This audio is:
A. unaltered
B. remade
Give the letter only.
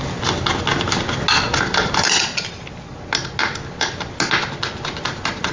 A